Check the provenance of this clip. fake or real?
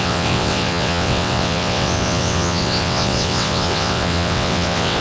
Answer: fake